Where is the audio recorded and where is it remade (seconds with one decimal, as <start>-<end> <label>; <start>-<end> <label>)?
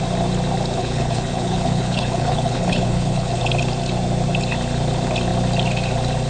0.0-0.8 recorded; 0.8-3.4 remade; 3.4-6.3 recorded